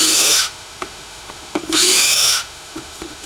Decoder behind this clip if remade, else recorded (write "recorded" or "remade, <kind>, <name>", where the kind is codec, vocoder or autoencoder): remade, autoencoder, DAC-VAE